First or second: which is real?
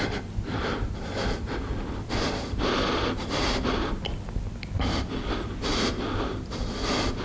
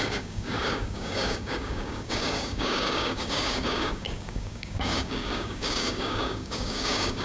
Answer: first